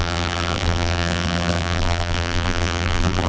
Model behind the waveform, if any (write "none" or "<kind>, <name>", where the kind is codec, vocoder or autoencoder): vocoder, BigVGAN v2